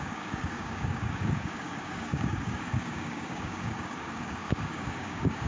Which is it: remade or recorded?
remade